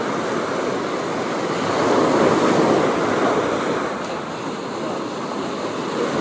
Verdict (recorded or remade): recorded